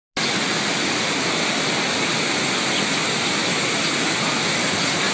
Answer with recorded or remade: recorded